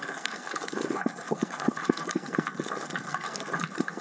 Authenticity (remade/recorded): remade